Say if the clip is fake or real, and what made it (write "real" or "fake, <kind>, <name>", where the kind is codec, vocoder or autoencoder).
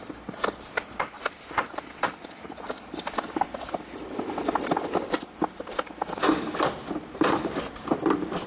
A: fake, vocoder, BigVGAN v2